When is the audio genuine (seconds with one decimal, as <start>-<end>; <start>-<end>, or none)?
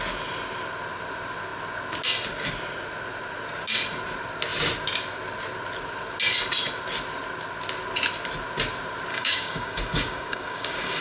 0.0-9.1